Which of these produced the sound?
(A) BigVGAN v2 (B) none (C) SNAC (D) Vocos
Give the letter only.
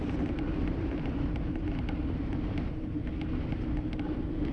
B